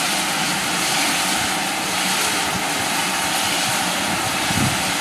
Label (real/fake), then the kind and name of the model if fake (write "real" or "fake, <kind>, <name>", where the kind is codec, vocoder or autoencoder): real